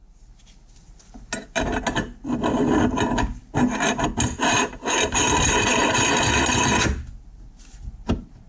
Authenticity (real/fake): real